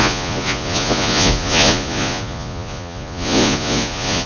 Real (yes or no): no